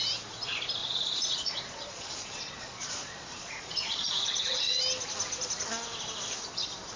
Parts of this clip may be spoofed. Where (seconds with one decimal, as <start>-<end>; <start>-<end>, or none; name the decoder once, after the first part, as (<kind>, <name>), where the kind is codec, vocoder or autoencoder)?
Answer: 0.8-4.8 (vocoder, Vocos)